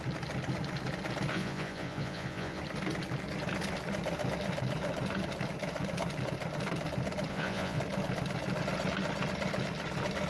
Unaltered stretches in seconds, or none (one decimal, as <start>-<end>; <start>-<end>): 0.0-1.3; 2.6-7.3; 7.8-10.3